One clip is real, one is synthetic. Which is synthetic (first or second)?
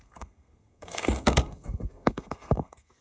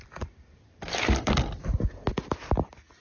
first